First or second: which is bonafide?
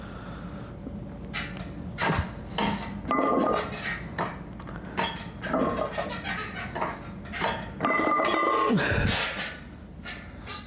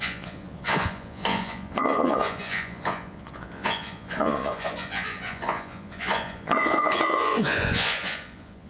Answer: first